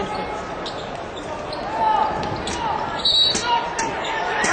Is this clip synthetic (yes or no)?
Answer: no